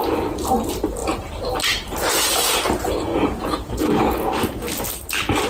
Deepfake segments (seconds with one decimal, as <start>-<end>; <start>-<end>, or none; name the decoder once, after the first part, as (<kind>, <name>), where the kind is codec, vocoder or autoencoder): 3.1-4.3 (vocoder, Vocos)